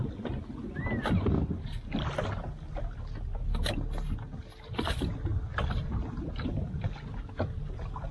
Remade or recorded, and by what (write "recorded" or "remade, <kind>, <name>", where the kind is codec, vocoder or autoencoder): recorded